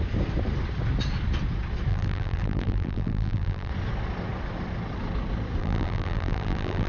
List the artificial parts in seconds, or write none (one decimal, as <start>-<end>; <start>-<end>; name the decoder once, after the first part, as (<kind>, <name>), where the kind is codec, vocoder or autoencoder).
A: 1.9-3.7 (vocoder, BigVGAN v2); 5.6-6.9